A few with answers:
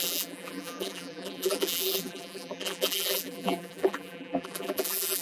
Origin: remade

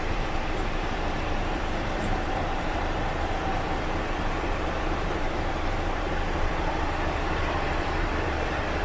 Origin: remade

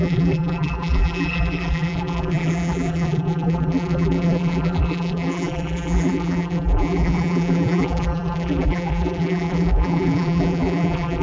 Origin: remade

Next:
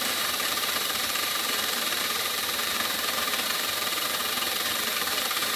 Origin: remade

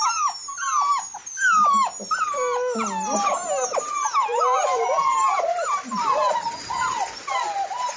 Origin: recorded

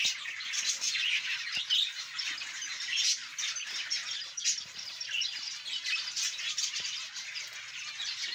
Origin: recorded